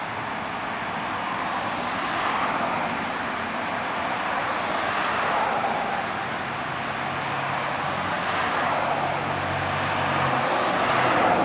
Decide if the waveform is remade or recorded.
recorded